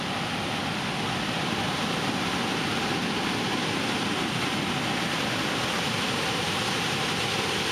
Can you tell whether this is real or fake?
real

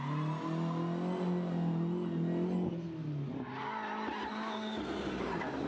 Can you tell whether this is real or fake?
real